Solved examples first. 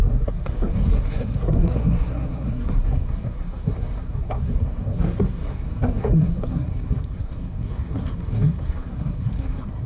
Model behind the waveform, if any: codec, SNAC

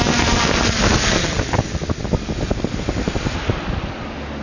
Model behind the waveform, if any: none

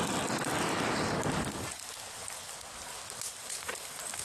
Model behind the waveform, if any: none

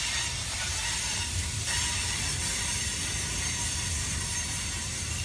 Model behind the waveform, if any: none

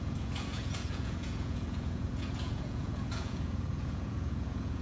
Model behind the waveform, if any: vocoder, Vocos